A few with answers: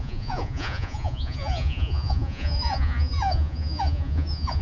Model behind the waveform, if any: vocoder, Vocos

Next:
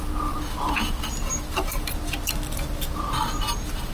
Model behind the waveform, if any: none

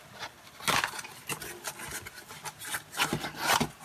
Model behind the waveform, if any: none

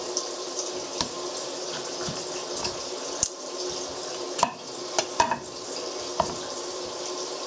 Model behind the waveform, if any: none